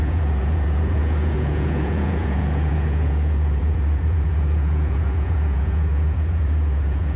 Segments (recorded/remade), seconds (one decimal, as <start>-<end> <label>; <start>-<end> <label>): 0.0-7.2 remade

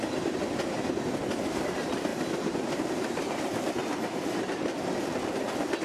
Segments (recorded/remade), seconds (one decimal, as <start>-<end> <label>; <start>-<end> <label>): 0.0-2.1 recorded; 2.1-5.8 remade

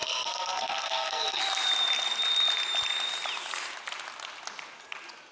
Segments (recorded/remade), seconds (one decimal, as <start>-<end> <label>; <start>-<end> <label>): 0.0-1.4 remade; 1.4-5.3 recorded

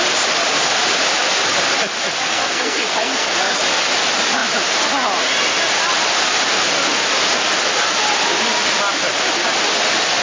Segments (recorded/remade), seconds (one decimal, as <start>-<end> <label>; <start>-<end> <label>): 0.0-2.3 recorded; 2.3-3.6 remade; 3.6-10.2 recorded

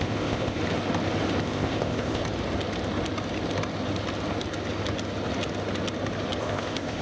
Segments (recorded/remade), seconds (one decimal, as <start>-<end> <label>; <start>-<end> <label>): 0.0-0.6 remade; 0.6-1.4 recorded; 1.4-2.2 remade; 2.2-6.4 recorded; 6.4-7.0 remade

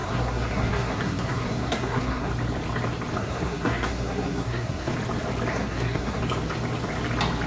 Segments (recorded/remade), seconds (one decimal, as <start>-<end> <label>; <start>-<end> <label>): 0.0-2.3 remade; 2.3-3.2 recorded; 3.2-4.9 remade; 4.9-5.5 recorded; 5.5-6.2 remade; 6.2-7.5 recorded

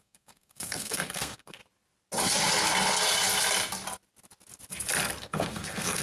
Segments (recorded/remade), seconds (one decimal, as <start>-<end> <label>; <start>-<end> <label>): 0.0-1.6 remade; 1.6-5.2 recorded; 5.2-6.0 remade

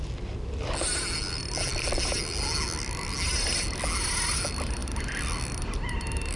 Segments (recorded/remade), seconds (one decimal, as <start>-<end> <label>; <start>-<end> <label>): 0.0-6.4 recorded